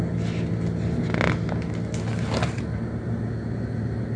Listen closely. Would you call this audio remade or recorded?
recorded